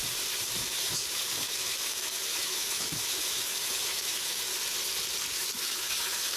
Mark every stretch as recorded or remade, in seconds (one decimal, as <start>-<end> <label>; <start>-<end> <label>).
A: 0.0-0.6 recorded; 0.6-4.4 remade; 4.4-5.3 recorded; 5.3-6.4 remade